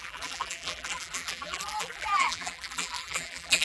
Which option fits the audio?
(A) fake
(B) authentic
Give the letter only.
A